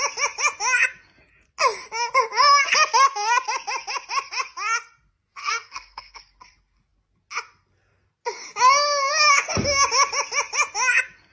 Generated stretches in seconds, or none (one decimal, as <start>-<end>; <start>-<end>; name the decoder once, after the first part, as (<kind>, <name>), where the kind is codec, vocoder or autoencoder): 5.4-6.2 (codec, SNAC)